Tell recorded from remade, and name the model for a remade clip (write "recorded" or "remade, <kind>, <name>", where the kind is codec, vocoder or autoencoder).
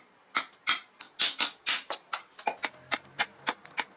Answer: recorded